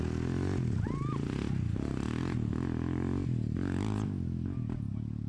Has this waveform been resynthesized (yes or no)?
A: no